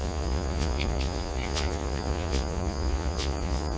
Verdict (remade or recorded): remade